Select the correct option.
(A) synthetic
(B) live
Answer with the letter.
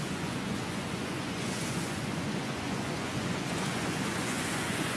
A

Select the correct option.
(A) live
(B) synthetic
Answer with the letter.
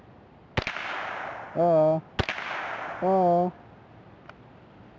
A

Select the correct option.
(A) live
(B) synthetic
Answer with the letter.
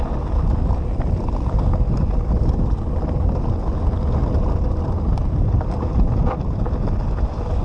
A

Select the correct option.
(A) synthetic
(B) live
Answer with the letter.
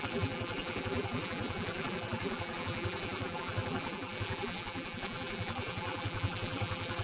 A